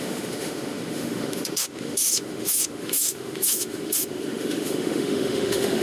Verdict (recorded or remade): remade